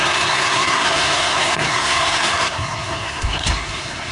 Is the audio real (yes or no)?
no